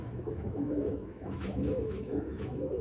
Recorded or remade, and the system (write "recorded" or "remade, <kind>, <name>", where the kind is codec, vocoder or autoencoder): remade, autoencoder, DAC-VAE